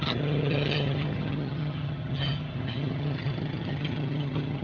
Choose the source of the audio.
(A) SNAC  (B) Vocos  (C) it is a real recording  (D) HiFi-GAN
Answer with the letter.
D